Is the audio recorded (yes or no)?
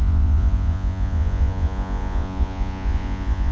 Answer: no